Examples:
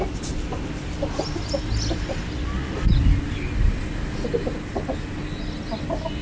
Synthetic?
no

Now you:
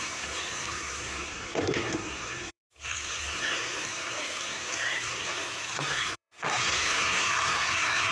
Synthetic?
yes